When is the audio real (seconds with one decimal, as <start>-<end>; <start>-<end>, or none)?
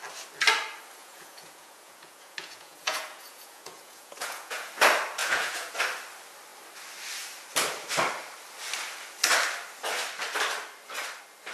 0.0-1.0; 4.7-5.2; 5.7-11.5